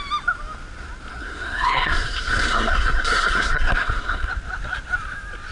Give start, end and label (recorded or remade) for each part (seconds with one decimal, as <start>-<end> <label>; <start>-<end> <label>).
0.0-1.2 recorded; 1.2-4.3 remade; 4.3-5.5 recorded